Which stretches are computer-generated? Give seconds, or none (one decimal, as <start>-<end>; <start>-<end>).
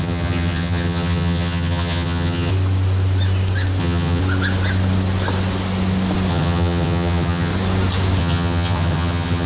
0.0-2.5; 3.8-4.2; 6.3-7.5; 8.2-9.5